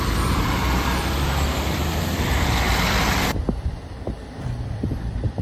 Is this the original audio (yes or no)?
no